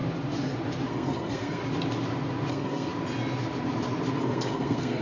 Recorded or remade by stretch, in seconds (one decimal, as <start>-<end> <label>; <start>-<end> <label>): 0.0-0.9 recorded; 0.9-1.6 remade; 1.6-2.5 recorded; 2.5-2.9 remade; 2.9-4.2 recorded; 4.2-5.0 remade